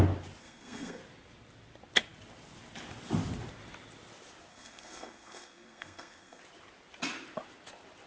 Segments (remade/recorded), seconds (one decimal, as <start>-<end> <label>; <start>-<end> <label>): 0.0-0.4 recorded; 0.4-1.0 remade; 1.0-4.5 recorded; 4.5-6.4 remade; 6.4-8.1 recorded

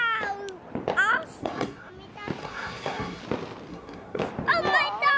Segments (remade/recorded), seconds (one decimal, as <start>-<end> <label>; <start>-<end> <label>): 0.0-1.4 recorded; 1.4-1.9 remade; 1.9-2.4 recorded; 2.4-3.2 remade; 3.2-3.7 recorded; 3.7-4.2 remade; 4.2-5.2 recorded

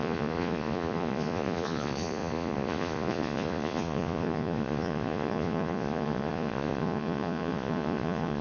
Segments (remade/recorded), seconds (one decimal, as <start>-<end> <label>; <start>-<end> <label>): 0.0-8.4 remade